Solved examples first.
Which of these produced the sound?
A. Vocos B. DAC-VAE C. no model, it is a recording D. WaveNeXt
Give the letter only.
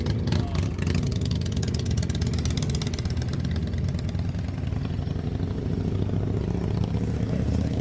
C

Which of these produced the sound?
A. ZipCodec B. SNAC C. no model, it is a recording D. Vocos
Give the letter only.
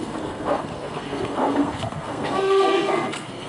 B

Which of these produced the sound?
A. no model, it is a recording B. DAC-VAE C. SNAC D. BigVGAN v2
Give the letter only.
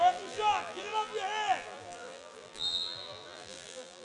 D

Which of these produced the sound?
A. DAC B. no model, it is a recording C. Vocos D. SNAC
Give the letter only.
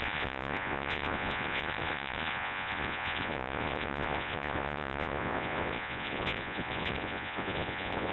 C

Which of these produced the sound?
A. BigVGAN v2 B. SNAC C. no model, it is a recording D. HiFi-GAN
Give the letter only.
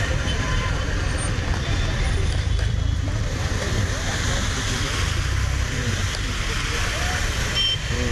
A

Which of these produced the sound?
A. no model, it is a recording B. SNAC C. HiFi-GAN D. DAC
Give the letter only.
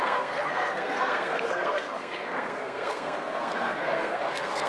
B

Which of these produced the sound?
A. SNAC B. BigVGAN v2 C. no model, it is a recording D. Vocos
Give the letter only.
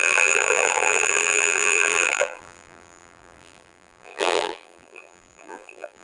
B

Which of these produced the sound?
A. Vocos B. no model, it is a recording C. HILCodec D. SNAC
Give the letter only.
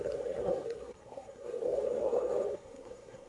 D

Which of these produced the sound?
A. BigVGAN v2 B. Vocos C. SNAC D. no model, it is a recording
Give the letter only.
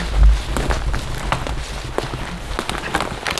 D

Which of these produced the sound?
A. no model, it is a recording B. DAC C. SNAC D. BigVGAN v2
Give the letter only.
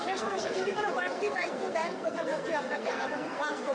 C